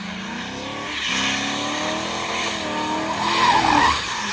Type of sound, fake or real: real